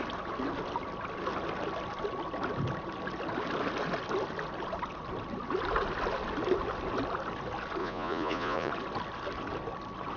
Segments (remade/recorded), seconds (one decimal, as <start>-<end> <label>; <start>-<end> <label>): 0.0-7.8 recorded; 7.8-8.7 remade; 8.7-10.2 recorded